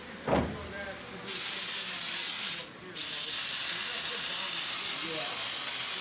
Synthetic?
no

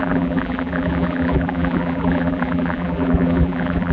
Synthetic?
yes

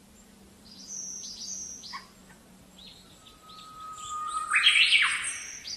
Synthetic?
no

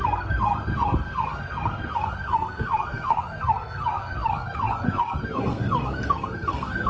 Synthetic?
yes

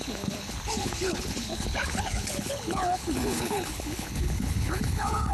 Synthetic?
yes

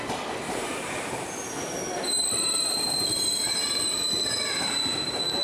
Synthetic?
yes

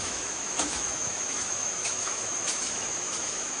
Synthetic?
yes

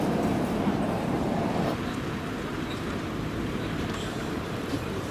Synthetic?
yes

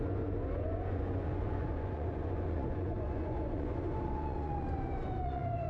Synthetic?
yes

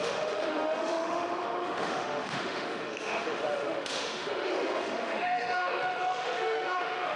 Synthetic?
yes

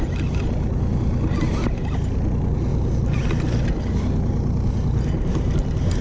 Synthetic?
no